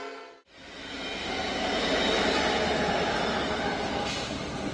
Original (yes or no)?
yes